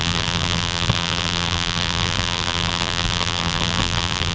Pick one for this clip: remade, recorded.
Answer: remade